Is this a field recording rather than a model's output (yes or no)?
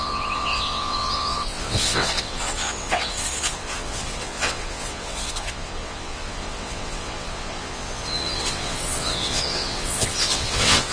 no